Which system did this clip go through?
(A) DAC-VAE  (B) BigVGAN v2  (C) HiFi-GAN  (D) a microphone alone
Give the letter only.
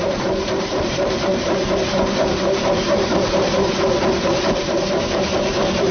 B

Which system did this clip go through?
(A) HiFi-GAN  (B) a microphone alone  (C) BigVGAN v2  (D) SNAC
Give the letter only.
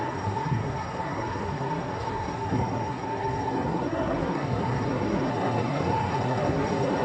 D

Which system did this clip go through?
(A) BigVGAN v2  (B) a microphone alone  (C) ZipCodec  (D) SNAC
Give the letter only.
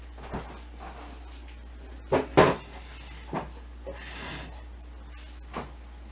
B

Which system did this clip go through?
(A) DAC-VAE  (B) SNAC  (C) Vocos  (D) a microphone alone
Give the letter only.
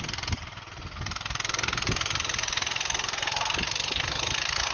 D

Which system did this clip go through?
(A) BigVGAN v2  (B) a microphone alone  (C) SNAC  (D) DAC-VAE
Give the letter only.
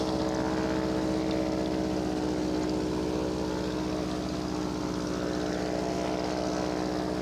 B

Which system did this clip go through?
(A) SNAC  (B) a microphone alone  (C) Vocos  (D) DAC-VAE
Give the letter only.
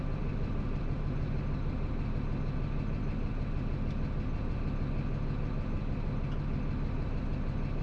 B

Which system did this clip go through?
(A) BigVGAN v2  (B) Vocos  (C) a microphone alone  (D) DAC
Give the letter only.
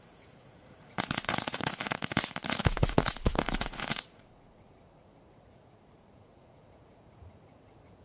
B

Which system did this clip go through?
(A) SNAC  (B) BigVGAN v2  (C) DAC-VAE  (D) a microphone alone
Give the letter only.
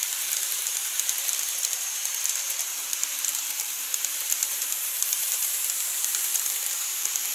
B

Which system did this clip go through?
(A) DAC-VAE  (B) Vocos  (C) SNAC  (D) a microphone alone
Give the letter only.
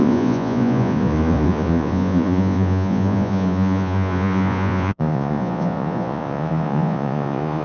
B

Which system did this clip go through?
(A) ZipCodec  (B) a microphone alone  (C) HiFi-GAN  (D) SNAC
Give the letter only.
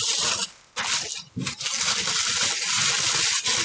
B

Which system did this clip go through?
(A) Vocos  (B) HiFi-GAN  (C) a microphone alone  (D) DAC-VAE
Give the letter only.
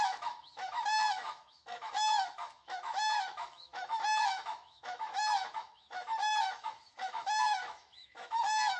D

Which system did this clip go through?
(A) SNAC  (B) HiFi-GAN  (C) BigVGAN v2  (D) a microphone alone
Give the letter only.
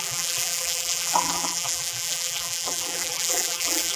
C